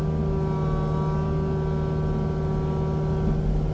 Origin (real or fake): real